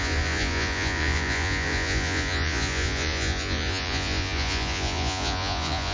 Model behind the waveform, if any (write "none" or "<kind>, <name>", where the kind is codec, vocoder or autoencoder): vocoder, Vocos